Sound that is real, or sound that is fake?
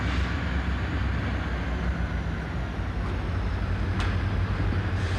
real